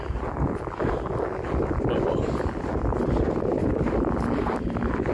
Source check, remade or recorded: recorded